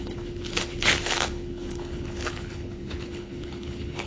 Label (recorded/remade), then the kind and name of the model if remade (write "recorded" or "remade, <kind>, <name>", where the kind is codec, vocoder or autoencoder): remade, codec, HILCodec